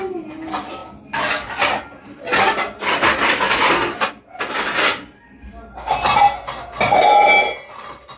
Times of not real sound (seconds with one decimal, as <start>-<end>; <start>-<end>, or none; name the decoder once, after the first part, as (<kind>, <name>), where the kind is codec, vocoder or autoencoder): none